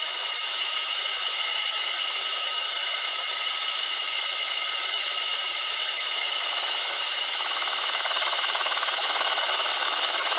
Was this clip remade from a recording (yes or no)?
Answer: yes